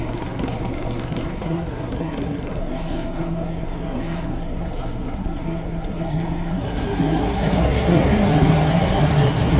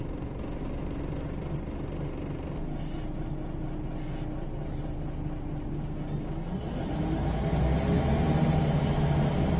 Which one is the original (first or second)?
second